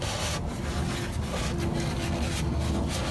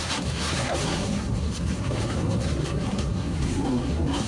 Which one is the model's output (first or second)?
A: second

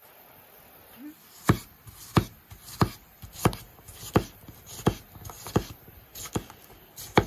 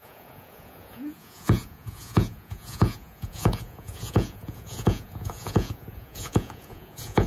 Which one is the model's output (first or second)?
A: second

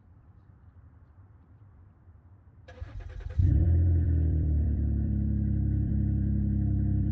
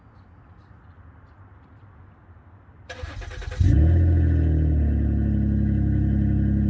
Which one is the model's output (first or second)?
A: first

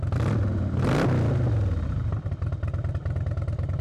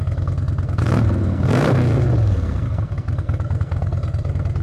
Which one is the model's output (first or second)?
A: second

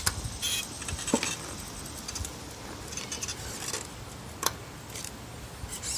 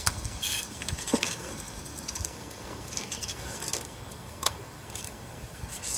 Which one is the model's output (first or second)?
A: second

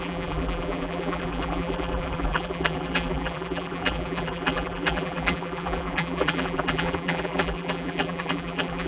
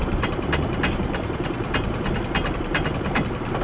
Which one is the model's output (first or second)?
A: first